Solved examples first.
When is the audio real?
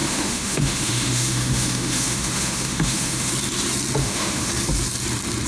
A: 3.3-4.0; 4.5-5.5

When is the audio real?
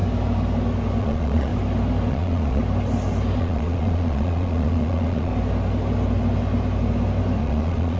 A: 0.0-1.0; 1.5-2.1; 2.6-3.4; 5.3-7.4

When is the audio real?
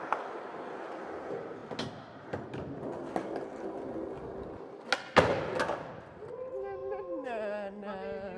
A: 0.0-8.4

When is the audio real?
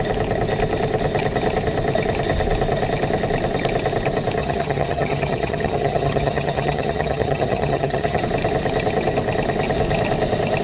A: 0.0-4.4; 8.2-10.6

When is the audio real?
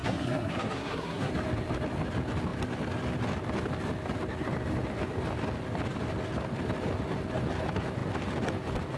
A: 1.3-9.0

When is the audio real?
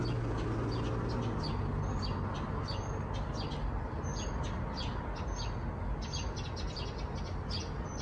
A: 0.0-8.0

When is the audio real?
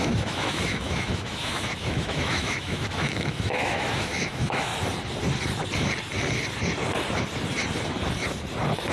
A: 4.7-8.9